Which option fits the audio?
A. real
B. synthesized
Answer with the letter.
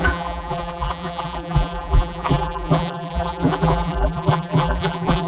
B